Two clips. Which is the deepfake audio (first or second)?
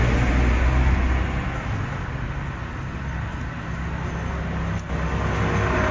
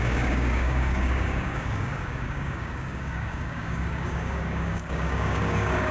second